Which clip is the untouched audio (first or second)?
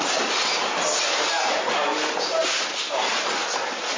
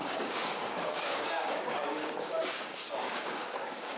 first